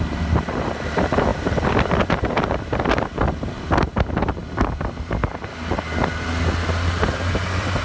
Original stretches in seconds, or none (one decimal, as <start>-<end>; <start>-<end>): 4.4-7.0

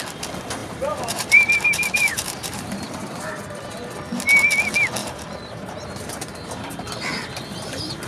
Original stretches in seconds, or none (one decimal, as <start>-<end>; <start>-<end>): 0.0-0.6; 3.3-5.0; 6.5-8.1